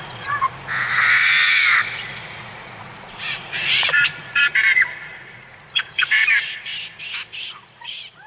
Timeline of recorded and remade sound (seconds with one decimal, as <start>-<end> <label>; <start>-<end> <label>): 0.0-6.7 remade; 6.7-7.5 recorded; 7.5-8.3 remade